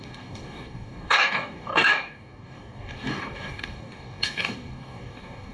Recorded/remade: remade